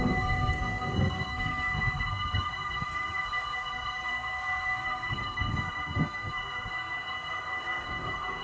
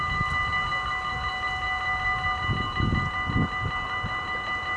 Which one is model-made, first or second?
first